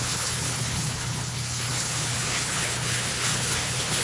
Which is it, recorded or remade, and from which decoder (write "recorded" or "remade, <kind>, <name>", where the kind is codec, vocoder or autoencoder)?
remade, codec, HILCodec